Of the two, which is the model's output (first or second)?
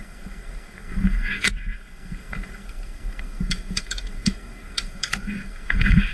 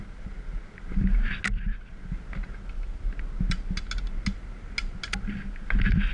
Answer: first